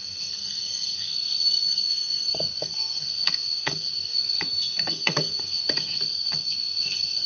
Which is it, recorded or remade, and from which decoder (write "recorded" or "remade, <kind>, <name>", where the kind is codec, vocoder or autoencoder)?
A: remade, codec, SNAC